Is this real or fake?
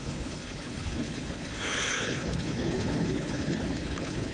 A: fake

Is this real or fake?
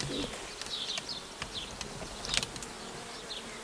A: real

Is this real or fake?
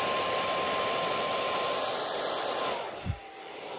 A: fake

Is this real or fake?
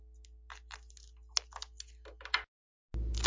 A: real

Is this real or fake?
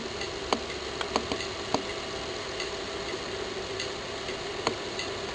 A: real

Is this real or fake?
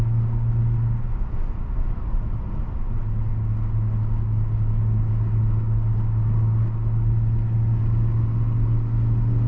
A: real